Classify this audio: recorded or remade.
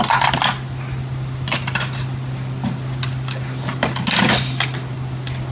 recorded